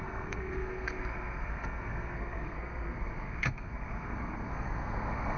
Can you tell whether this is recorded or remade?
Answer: remade